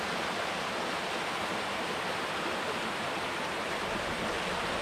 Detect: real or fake real